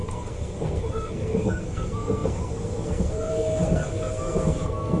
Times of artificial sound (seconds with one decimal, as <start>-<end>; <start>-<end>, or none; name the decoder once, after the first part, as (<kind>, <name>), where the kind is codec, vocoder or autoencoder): 0.0-5.0 (codec, SNAC)